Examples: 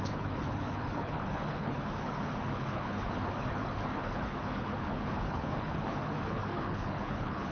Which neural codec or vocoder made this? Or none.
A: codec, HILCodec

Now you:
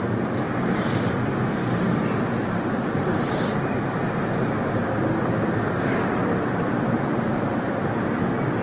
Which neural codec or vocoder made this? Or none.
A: none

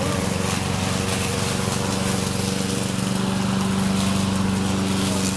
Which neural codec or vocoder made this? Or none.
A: none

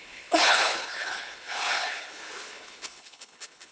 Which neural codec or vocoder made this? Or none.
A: codec, HILCodec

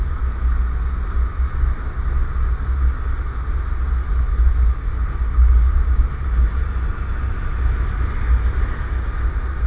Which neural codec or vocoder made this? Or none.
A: none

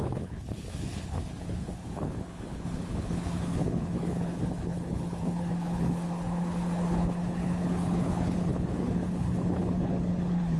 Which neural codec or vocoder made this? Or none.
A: codec, HILCodec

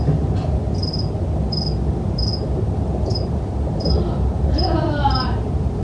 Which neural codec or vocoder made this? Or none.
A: none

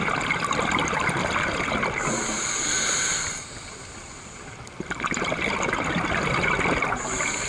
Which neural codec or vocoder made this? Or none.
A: none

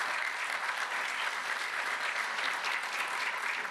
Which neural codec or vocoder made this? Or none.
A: none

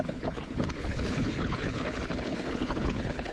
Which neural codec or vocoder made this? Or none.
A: codec, HILCodec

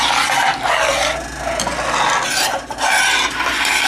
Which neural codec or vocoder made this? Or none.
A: none